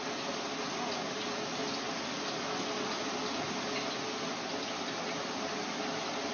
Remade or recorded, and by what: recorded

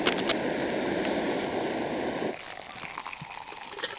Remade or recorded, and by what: recorded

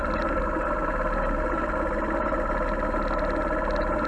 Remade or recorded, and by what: recorded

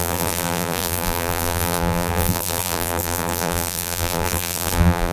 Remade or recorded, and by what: remade, vocoder, BigVGAN v2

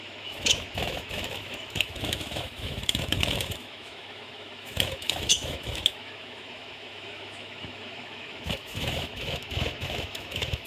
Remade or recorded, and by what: remade, autoencoder, DAC-VAE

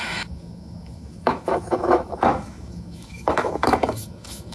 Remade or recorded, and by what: remade, autoencoder, DAC-VAE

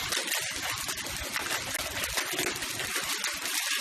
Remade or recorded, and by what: recorded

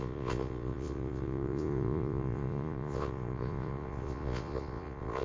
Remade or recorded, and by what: remade, vocoder, Vocos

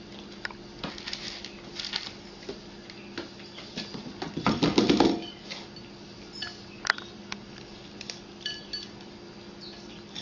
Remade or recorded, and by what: recorded